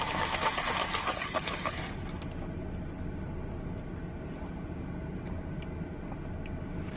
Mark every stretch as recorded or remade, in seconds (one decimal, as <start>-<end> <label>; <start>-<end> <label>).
0.0-1.0 recorded; 1.0-1.8 remade; 1.8-7.0 recorded